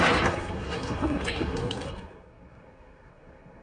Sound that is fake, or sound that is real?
fake